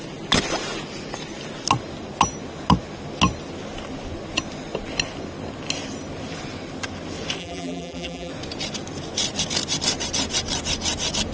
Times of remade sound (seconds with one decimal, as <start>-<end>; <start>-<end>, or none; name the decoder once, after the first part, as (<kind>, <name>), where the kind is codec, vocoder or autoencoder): 7.4-8.3 (vocoder, BigVGAN v2)